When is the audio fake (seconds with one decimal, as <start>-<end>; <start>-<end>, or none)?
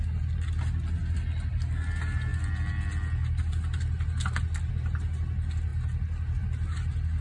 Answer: none